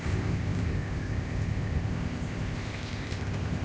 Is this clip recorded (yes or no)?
no